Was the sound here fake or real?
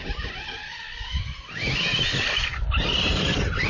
real